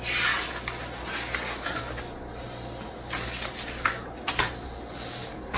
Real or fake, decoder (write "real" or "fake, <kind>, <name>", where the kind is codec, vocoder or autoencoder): real